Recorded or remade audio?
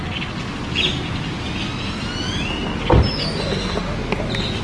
recorded